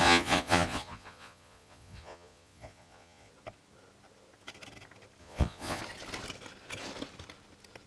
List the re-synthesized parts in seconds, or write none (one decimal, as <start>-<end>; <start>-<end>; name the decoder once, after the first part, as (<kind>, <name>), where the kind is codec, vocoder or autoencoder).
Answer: 0.0-3.3 (vocoder, Vocos); 5.2-5.8